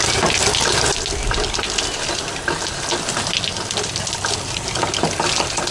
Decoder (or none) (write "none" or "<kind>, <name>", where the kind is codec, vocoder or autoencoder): none